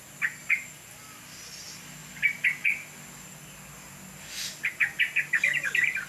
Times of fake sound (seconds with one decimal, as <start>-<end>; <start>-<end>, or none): none